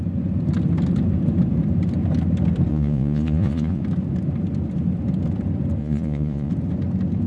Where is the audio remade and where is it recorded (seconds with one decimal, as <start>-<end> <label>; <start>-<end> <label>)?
0.0-2.7 recorded; 2.7-3.8 remade; 3.8-5.8 recorded; 5.8-6.5 remade; 6.5-7.3 recorded